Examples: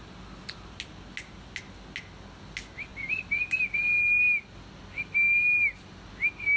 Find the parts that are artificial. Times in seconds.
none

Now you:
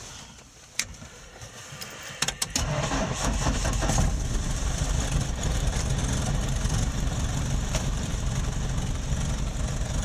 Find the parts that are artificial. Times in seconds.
0.0-6.0 (vocoder, BigVGAN v2); 6.9-10.0

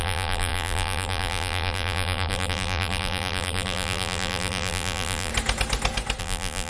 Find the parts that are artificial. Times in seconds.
0.0-5.3 (vocoder, BigVGAN v2); 6.2-6.7

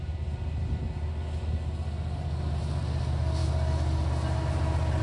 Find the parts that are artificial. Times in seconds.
none

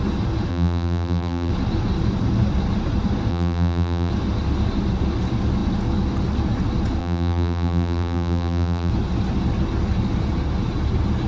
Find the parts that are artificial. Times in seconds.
0.5-1.5 (vocoder, BigVGAN v2); 3.3-4.1; 7.0-8.9